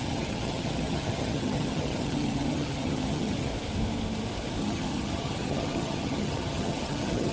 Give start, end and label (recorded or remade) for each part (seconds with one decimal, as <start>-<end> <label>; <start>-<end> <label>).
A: 0.0-3.5 remade; 3.5-4.6 recorded; 4.6-7.3 remade